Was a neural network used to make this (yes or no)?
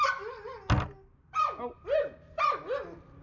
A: no